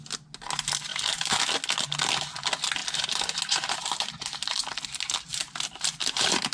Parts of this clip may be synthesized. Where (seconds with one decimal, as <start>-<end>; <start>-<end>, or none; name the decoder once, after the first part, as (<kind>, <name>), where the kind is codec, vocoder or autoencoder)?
0.9-1.4 (vocoder, BigVGAN v2)